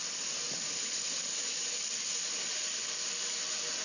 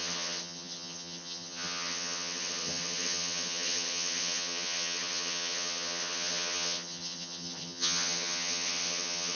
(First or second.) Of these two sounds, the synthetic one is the second